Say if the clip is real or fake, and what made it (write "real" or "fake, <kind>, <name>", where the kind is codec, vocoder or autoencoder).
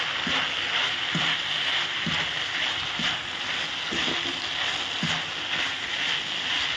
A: real